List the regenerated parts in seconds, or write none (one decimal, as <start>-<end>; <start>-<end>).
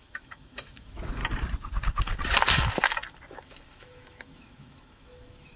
0.0-1.2; 3.3-5.6